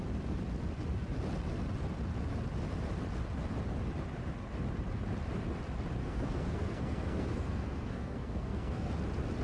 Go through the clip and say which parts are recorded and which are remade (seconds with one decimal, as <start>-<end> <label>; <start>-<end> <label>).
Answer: 0.0-6.0 recorded; 6.0-8.9 remade; 8.9-9.4 recorded